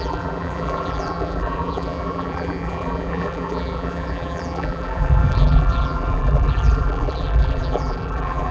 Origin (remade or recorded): remade